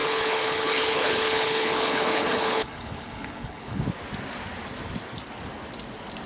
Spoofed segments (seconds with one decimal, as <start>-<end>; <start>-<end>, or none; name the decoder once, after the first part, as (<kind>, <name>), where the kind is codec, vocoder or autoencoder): 0.0-3.8 (codec, HILCodec)